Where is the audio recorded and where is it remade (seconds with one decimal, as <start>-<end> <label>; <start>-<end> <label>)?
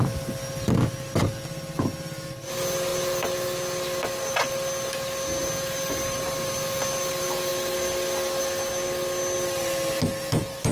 0.0-10.7 recorded